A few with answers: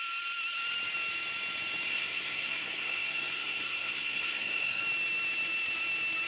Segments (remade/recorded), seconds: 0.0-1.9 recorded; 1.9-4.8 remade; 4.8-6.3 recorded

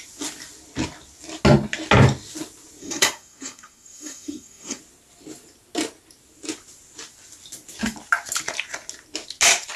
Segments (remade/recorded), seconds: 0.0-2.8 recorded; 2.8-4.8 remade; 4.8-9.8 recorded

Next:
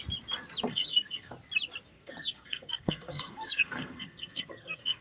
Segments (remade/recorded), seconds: 0.0-0.7 recorded; 0.7-1.3 remade; 1.3-1.9 recorded; 1.9-5.0 remade

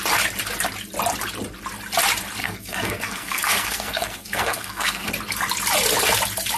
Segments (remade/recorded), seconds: 0.0-2.4 recorded; 2.4-5.1 remade; 5.1-6.6 recorded